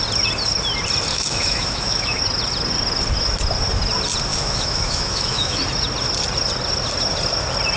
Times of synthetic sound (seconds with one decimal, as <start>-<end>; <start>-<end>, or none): 1.1-2.2; 4.3-5.6